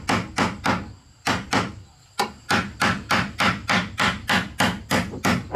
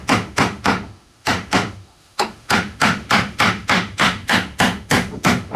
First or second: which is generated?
second